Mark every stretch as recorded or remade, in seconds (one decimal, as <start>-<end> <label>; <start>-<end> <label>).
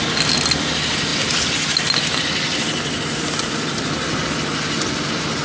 0.0-5.4 recorded